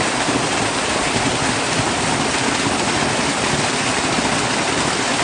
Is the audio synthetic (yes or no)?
no